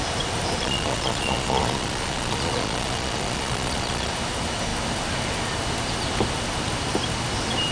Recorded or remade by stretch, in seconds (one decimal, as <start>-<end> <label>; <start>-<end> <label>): 0.0-0.6 recorded; 0.6-4.1 remade; 4.1-7.7 recorded